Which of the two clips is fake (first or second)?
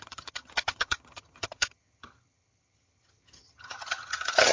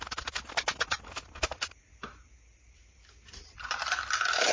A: first